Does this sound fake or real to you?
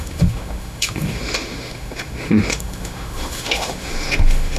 fake